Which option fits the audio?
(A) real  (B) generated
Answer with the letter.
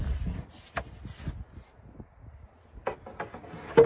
A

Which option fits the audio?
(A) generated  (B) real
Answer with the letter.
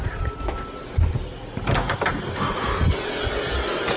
B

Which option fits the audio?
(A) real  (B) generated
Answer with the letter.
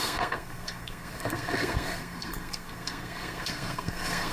B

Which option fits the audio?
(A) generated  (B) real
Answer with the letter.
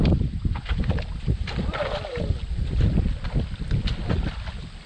B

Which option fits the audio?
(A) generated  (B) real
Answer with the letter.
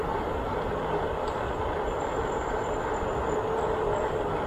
B